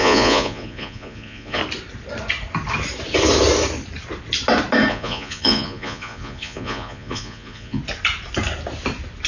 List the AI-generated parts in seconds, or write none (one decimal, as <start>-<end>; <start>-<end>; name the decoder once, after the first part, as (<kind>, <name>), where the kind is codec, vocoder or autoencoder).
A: 0.0-1.6 (vocoder, Vocos); 4.9-7.8